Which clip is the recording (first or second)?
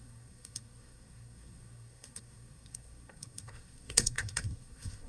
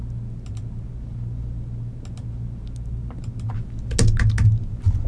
second